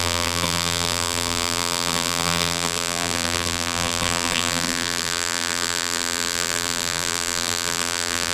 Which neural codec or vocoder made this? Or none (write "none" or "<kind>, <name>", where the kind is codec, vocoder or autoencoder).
vocoder, BigVGAN v2